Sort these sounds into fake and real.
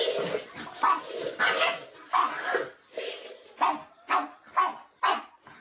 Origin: real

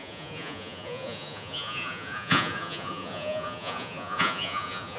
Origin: fake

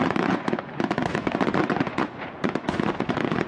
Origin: fake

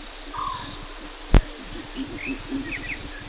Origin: real